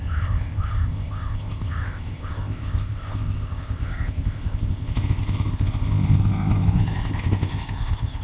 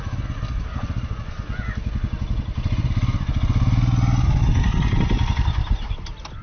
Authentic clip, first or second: second